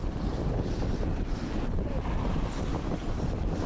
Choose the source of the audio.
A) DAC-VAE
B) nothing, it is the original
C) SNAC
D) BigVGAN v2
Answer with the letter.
B